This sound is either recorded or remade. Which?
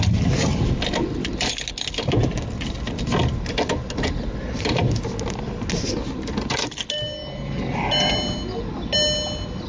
recorded